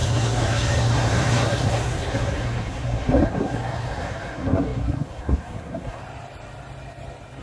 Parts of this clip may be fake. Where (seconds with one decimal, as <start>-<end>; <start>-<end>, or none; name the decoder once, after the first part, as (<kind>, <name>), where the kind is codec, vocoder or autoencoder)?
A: 0.0-6.0 (codec, SNAC)